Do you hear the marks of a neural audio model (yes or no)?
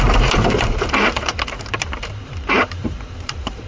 yes